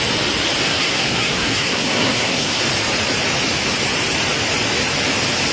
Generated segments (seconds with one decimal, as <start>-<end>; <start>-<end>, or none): 0.6-2.6